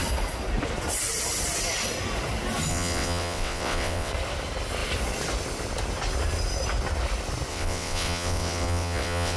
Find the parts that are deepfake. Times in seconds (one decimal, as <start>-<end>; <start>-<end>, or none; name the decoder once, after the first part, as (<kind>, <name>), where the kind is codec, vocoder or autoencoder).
2.7-4.1 (vocoder, WaveNeXt); 7.5-9.4